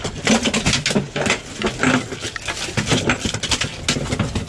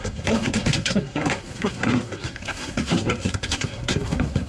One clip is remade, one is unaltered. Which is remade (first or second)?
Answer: second